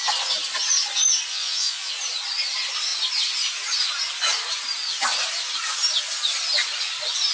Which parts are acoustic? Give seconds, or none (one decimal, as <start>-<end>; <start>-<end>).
0.0-1.3; 1.9-7.3